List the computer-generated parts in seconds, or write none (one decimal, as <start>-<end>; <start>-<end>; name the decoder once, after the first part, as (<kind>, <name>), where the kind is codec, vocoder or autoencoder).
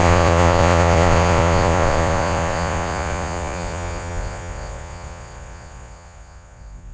0.0-6.9 (vocoder, Vocos)